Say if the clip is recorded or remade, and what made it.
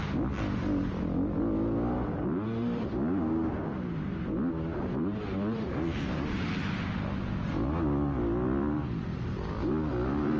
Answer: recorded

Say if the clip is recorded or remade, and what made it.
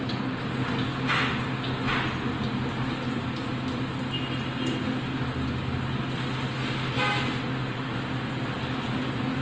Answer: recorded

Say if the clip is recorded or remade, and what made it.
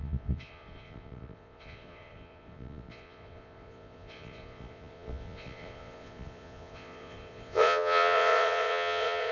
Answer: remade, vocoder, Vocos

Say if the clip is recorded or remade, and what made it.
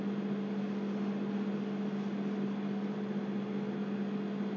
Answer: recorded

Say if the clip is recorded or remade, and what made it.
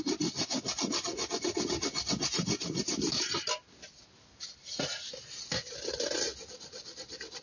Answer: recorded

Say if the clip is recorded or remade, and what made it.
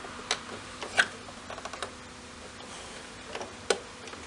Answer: recorded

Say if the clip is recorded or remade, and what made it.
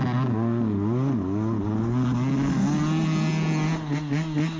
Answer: recorded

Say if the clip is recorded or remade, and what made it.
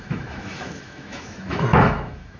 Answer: remade, autoencoder, DAC-VAE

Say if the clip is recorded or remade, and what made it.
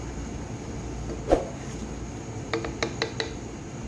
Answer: recorded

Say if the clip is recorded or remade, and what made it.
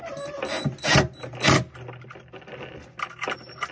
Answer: recorded